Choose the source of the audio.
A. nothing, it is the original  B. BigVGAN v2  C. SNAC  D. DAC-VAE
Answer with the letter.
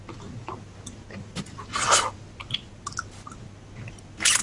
A